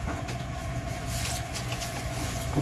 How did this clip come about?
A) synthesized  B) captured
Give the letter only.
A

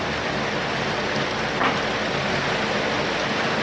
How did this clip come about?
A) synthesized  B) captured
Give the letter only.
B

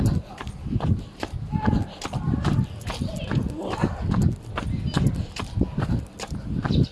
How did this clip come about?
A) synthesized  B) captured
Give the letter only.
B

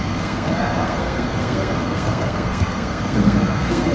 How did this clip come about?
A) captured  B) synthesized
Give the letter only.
B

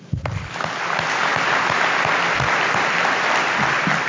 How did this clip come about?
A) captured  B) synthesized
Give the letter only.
A